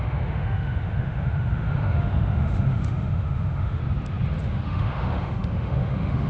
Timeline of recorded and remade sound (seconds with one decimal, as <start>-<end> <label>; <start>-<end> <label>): 0.0-3.8 remade; 3.8-4.4 recorded; 4.4-6.3 remade